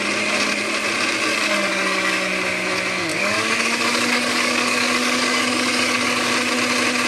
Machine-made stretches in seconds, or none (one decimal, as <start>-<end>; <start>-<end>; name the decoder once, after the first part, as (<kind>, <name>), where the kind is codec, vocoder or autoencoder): 1.3-2.3 (codec, DAC); 3.1-6.3